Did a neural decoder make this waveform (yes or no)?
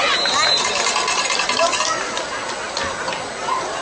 no